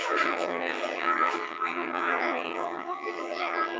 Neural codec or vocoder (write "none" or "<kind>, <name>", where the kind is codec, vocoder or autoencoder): vocoder, HiFi-GAN